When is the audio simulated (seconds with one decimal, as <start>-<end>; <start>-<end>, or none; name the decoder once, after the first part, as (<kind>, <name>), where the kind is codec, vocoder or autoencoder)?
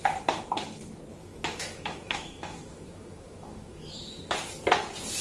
1.2-4.3 (autoencoder, DAC-VAE)